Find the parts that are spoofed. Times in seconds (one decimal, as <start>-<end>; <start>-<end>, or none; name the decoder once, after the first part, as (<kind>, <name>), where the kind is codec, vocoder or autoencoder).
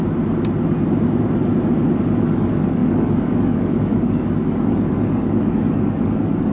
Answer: 2.2-6.5 (codec, DAC)